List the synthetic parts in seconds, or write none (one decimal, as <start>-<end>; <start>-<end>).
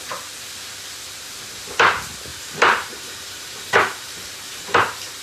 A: 2.3-4.8